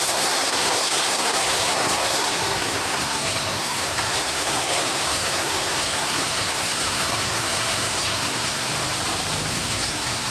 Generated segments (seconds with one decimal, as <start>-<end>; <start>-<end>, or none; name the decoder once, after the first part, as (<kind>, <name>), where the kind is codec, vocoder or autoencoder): 0.0-8.7 (codec, SNAC); 9.5-10.3